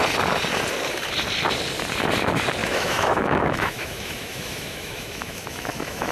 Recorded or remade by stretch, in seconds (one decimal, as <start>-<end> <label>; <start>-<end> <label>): 0.0-2.6 recorded; 2.6-6.1 remade